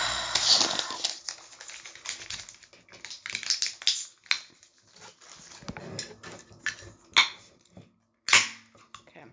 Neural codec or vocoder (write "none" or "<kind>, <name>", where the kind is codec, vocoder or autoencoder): none